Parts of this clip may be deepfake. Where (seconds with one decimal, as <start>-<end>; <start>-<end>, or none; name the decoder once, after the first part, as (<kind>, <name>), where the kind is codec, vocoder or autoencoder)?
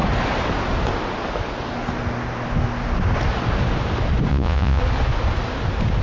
4.3-4.8 (vocoder, Vocos)